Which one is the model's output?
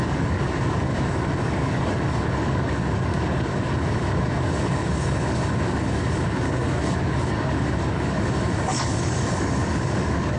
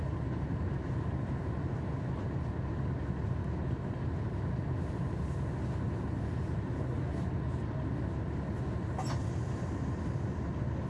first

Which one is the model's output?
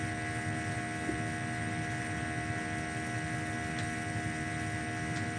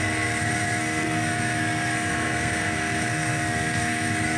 second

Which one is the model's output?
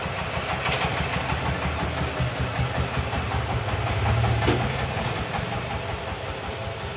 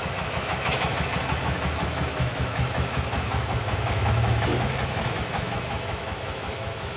second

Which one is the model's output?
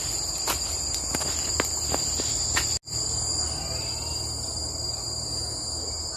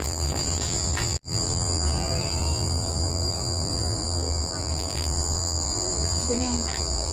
second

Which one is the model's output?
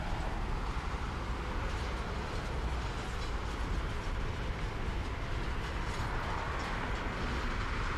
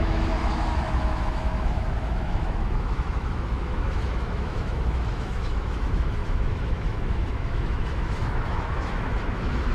second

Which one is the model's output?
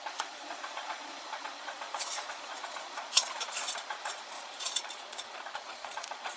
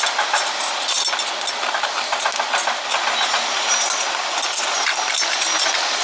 first